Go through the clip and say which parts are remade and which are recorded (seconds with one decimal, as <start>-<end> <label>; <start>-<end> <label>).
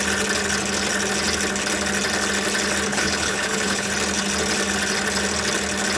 0.0-2.9 recorded; 2.9-3.9 remade; 3.9-6.0 recorded